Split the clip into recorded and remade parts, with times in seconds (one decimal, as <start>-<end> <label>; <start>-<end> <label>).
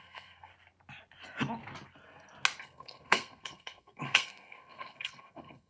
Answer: 0.0-0.5 remade; 0.5-2.6 recorded; 2.6-5.7 remade